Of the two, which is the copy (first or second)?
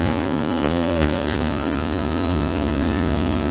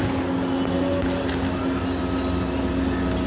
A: first